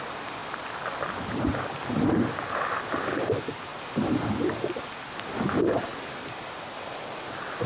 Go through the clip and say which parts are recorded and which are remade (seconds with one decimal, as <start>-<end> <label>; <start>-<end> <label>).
0.0-7.7 recorded